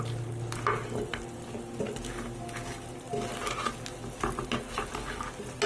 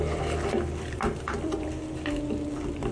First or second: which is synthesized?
second